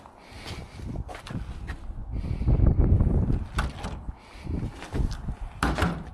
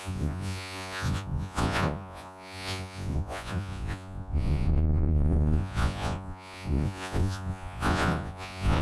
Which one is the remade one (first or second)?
second